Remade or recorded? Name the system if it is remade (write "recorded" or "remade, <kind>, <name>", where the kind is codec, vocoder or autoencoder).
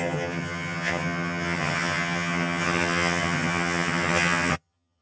remade, vocoder, HiFi-GAN